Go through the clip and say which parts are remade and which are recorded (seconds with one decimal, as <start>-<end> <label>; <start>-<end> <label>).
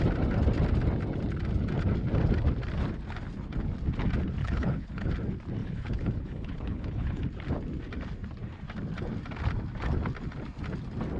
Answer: 0.0-4.4 recorded; 4.4-5.1 remade; 5.1-5.6 recorded; 5.6-7.2 remade; 7.2-11.2 recorded